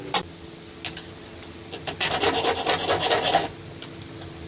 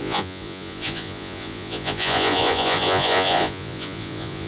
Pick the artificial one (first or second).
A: second